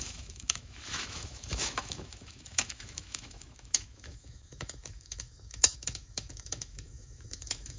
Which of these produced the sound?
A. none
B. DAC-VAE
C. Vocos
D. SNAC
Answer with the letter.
B